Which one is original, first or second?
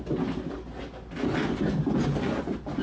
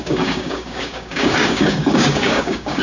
first